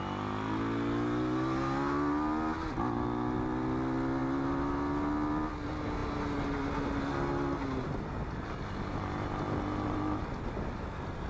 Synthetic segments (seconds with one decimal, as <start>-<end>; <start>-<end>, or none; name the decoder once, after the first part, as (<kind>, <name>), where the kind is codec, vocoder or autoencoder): none